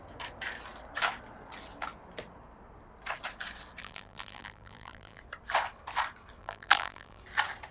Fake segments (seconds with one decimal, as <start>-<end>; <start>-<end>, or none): 3.8-5.2; 6.4-7.2